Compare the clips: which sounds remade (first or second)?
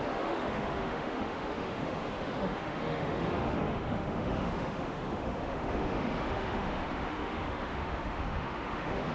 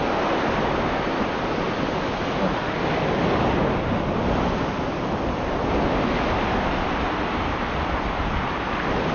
first